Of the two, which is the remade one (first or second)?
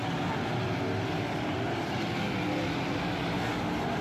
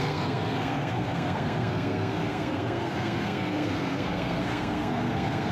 second